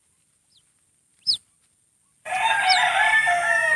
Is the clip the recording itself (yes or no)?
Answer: yes